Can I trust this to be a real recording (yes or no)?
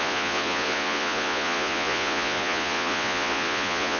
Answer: no